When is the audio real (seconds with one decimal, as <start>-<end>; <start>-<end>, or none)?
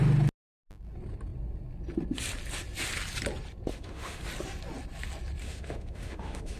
0.0-3.7; 4.2-5.4